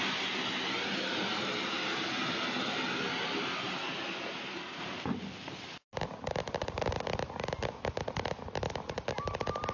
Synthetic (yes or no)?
no